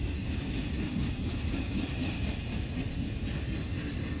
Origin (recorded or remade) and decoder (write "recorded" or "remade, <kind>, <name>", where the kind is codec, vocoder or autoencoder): recorded